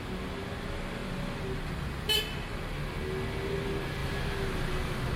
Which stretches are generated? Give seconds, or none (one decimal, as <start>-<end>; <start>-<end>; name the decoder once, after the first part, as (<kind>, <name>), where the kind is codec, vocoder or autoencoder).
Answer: none